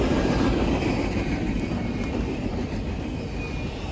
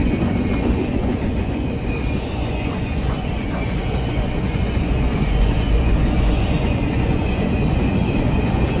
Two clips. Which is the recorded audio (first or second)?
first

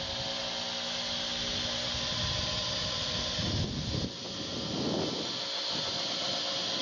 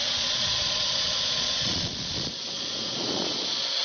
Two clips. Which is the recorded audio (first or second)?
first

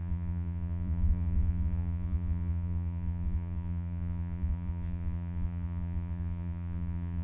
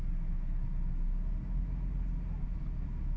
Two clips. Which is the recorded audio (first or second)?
second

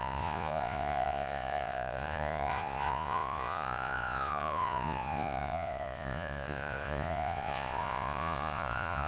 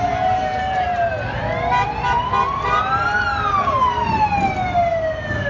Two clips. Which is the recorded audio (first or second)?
second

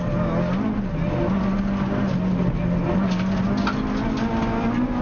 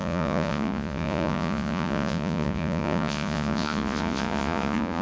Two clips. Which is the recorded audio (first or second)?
first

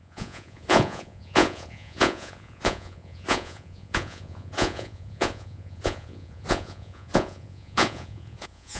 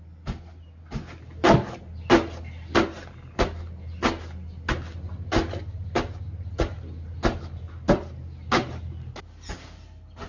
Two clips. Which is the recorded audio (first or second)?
second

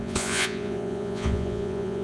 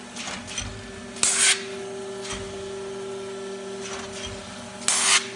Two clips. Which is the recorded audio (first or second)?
second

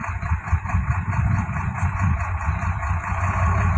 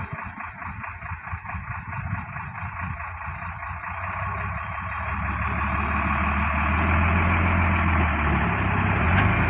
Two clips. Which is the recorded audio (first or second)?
second